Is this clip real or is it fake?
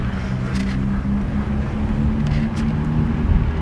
real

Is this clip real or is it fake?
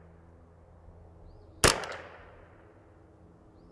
real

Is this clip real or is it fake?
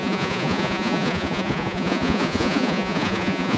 fake